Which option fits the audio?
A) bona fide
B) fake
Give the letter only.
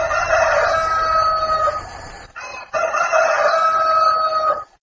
A